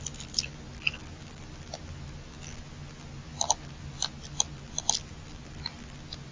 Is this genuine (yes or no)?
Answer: yes